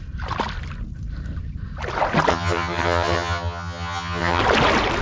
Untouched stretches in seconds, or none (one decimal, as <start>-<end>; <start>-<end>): 0.0-2.3; 4.4-5.0